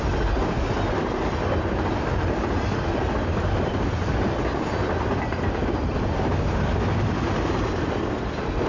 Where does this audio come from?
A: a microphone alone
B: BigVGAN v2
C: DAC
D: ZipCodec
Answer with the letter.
A